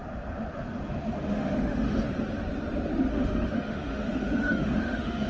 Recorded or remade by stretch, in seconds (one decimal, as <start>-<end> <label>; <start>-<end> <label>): 0.0-1.2 recorded; 1.2-2.0 remade; 2.0-3.1 recorded; 3.1-5.3 remade